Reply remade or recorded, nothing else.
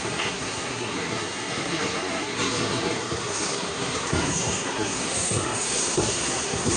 remade